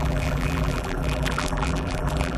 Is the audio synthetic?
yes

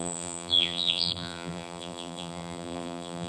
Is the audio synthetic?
yes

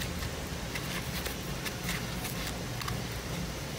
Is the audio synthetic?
no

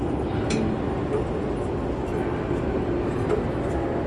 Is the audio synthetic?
no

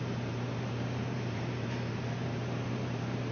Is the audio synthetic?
yes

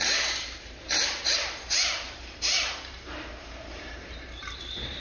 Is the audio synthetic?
yes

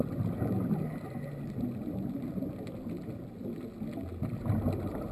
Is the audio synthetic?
no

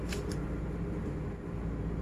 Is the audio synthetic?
no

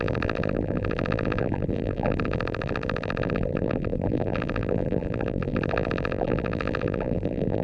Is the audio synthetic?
yes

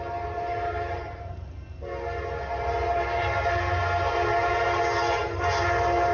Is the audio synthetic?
no